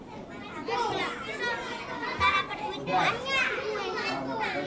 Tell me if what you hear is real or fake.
real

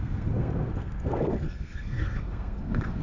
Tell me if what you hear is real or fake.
fake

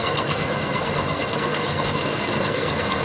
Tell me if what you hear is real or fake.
fake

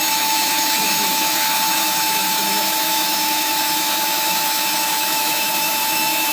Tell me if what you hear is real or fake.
fake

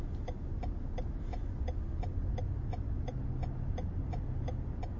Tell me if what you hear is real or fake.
real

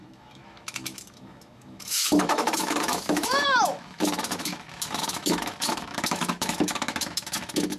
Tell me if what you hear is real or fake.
fake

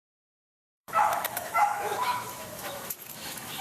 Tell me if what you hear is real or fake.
fake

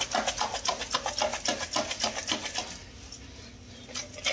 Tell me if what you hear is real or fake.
real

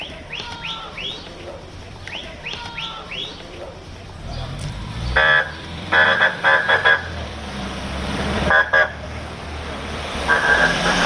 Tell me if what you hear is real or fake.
fake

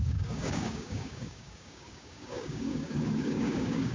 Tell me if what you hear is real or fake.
fake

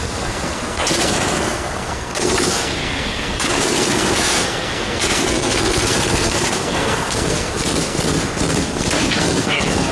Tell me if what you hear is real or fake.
fake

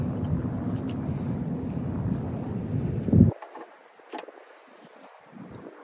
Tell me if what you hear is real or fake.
real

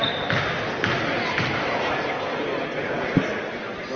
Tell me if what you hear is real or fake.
real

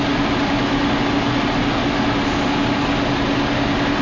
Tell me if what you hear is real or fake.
real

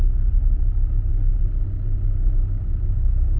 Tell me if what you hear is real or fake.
real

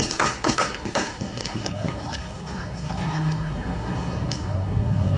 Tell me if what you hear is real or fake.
fake